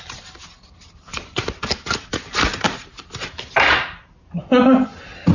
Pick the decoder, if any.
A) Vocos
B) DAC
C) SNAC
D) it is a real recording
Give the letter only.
D